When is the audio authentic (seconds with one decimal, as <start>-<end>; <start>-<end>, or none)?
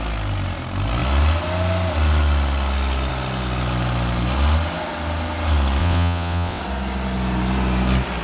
0.0-5.8; 6.6-8.2